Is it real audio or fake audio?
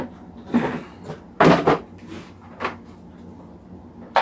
real